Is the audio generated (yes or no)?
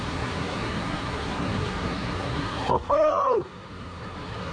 yes